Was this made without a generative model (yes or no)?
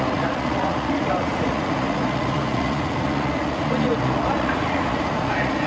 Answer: no